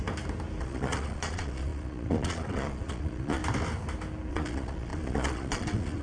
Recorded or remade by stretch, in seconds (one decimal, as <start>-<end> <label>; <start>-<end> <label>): 0.0-0.6 recorded; 0.6-3.4 remade; 3.4-4.3 recorded; 4.3-6.0 remade